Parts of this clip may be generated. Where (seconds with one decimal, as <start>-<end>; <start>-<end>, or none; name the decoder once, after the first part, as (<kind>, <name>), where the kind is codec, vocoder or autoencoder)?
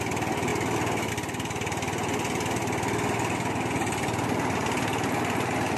none